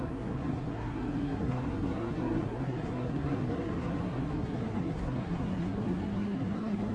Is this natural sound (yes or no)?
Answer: no